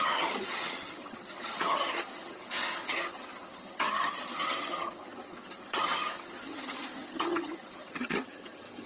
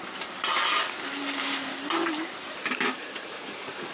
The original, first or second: second